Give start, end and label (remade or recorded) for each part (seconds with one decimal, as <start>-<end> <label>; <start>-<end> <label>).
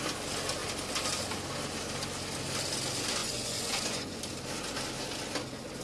0.0-3.2 recorded; 3.2-4.2 remade; 4.2-5.8 recorded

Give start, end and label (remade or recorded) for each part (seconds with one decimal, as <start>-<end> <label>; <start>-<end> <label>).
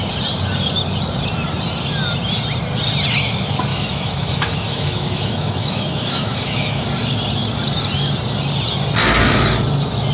0.0-3.7 recorded; 3.7-6.9 remade; 6.9-10.1 recorded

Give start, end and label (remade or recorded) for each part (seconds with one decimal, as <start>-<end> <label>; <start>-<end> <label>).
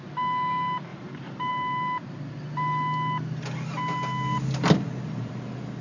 0.0-0.9 recorded; 0.9-1.5 remade; 1.5-5.8 recorded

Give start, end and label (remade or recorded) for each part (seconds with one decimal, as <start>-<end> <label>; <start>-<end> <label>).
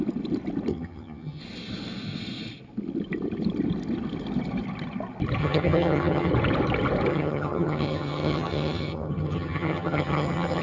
0.0-0.7 recorded; 0.7-1.4 remade; 1.4-5.4 recorded; 5.4-6.3 remade; 6.3-7.1 recorded; 7.1-10.6 remade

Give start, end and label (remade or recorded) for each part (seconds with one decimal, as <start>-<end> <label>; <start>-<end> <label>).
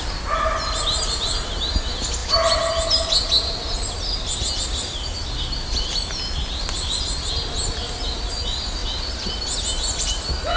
0.0-10.6 recorded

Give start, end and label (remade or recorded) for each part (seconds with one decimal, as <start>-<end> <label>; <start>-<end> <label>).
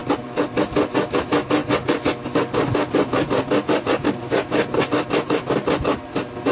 0.0-6.5 recorded